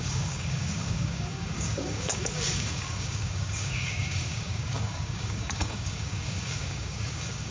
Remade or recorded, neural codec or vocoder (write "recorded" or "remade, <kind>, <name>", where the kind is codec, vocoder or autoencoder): remade, codec, DAC